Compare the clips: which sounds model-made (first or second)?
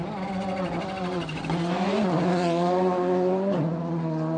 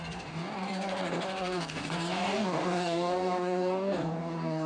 second